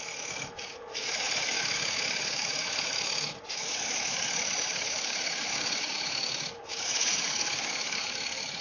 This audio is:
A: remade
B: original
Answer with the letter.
A